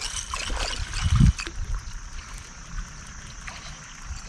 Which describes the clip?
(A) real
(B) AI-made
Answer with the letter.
A